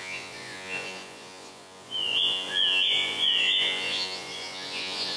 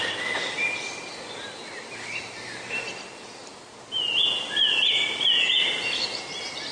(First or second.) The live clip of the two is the second